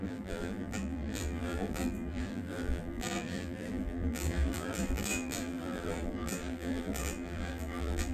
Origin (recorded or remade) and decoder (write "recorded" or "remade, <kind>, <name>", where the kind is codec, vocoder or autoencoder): remade, vocoder, BigVGAN v2